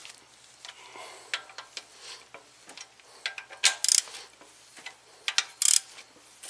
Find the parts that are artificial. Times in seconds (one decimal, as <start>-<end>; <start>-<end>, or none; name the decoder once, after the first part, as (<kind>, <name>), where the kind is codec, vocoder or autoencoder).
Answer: none